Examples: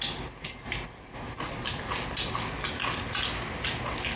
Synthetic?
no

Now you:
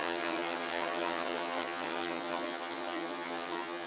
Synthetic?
yes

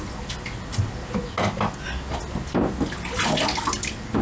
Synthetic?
no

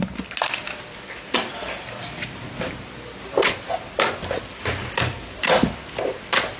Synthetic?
no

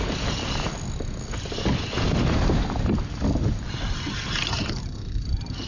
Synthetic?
no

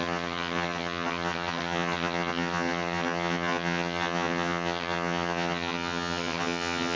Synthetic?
yes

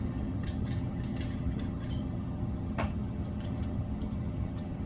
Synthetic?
yes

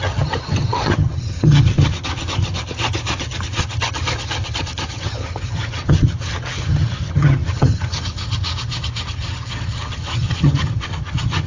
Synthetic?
yes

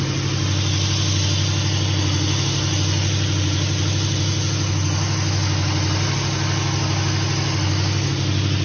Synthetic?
no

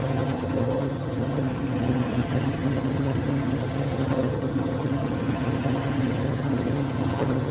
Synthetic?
yes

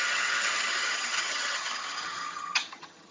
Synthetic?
yes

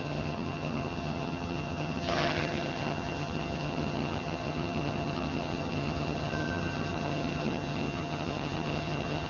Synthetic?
yes